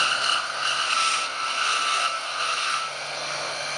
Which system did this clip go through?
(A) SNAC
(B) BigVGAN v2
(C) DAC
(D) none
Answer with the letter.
A